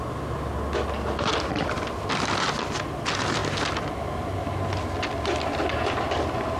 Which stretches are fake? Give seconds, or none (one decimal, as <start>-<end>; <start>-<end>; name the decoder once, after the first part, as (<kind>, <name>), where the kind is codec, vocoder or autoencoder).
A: none